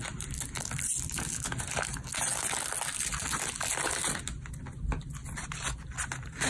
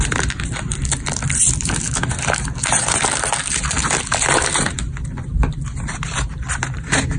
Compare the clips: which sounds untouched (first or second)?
first